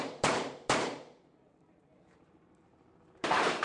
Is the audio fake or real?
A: fake